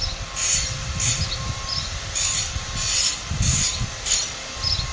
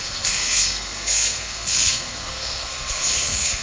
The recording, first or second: first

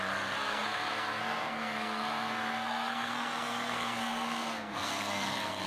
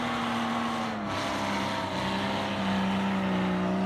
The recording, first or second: second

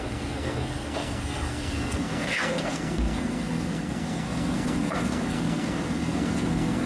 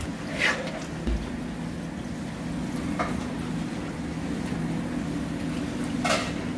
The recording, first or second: second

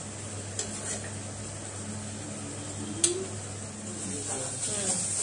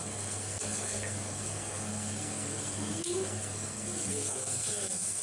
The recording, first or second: first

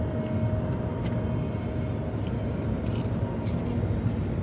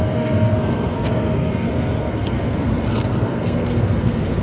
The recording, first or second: first